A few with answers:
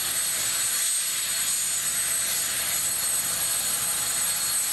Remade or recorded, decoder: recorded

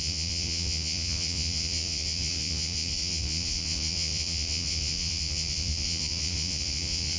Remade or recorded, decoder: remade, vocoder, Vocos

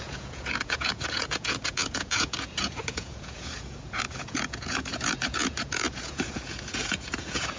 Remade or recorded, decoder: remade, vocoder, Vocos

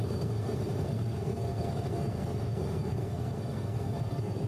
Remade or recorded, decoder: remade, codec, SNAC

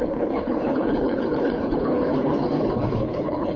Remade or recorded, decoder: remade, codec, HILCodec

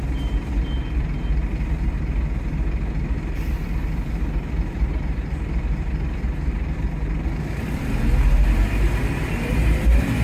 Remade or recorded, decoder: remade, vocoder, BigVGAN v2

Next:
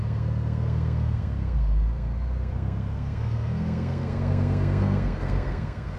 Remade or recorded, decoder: remade, codec, SNAC